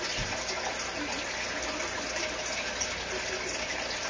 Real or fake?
real